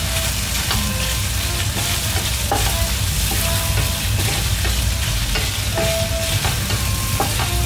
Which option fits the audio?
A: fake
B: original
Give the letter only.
B